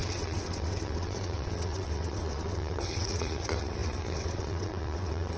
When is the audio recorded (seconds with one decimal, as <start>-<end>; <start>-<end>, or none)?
none